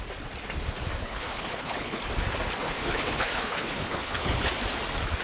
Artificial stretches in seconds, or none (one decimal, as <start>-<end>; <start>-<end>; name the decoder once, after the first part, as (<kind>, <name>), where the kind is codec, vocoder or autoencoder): 1.0-2.0 (codec, HILCodec); 2.6-4.5